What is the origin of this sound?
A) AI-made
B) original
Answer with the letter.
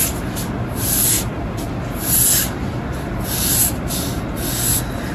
B